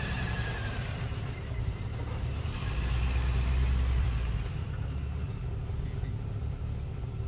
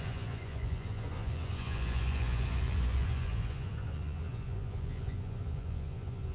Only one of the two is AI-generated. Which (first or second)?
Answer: second